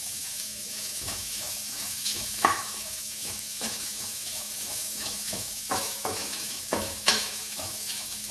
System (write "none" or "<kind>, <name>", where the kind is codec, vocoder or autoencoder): autoencoder, DAC-VAE